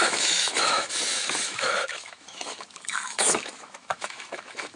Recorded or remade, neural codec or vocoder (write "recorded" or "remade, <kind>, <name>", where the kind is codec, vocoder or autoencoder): remade, autoencoder, DAC-VAE